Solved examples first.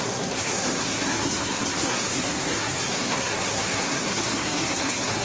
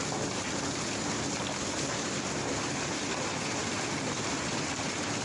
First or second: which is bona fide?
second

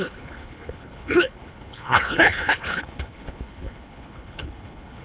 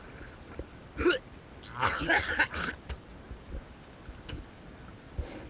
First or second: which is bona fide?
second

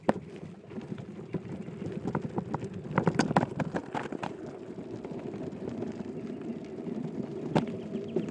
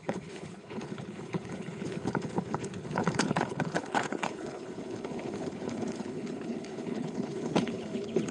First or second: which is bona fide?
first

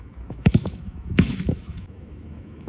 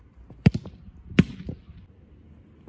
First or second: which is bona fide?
second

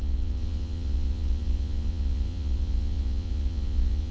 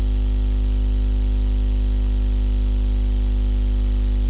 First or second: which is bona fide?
second